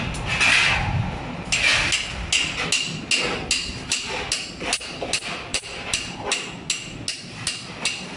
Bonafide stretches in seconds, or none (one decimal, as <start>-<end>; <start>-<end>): 0.0-5.5; 6.0-8.2